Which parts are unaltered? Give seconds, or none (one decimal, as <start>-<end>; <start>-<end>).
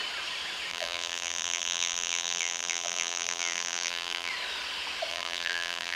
0.0-0.7; 4.3-5.1